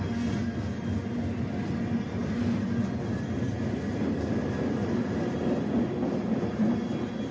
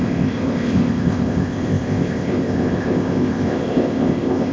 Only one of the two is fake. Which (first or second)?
second